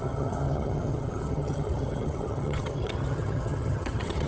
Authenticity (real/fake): fake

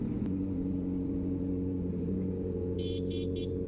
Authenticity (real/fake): real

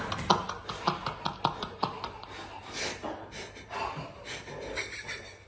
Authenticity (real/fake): real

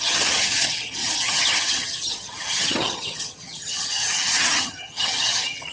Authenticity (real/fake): fake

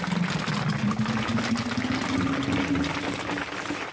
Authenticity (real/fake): real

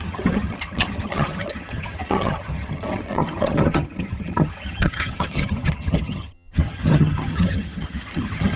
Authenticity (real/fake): fake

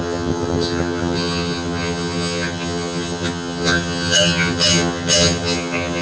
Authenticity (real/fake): fake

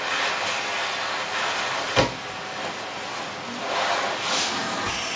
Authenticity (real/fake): real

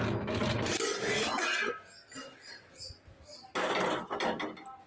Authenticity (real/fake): real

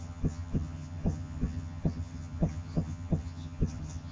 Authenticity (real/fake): fake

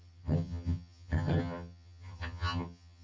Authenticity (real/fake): fake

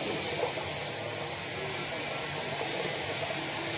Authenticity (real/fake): real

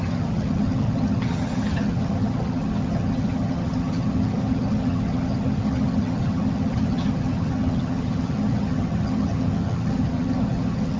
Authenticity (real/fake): fake